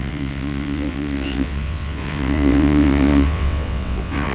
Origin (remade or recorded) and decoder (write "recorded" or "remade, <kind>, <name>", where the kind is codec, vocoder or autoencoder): remade, vocoder, WaveNeXt